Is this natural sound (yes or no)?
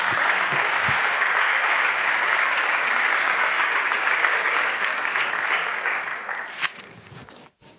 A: no